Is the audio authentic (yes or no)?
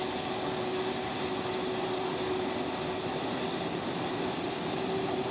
yes